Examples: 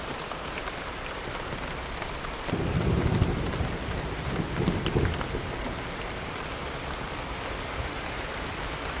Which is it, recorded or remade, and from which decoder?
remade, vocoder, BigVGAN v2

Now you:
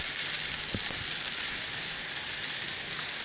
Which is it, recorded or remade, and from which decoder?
recorded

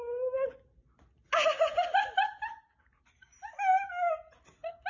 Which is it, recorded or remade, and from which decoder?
recorded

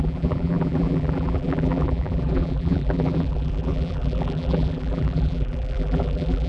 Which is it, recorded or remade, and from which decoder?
remade, vocoder, BigVGAN v2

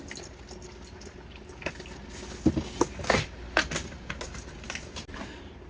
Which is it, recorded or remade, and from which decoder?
recorded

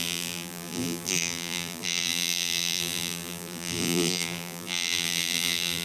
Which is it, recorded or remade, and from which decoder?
remade, vocoder, BigVGAN v2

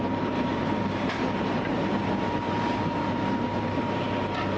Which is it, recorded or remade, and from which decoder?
remade, vocoder, BigVGAN v2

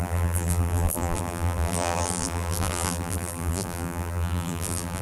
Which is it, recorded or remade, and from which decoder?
remade, vocoder, BigVGAN v2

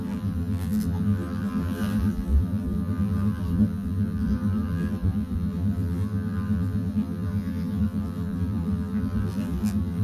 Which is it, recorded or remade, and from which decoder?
remade, vocoder, BigVGAN v2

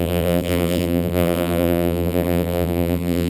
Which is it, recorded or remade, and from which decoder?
remade, vocoder, BigVGAN v2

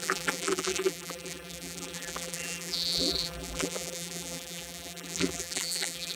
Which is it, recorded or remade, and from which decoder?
remade, vocoder, BigVGAN v2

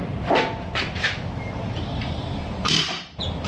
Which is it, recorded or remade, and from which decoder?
remade, vocoder, BigVGAN v2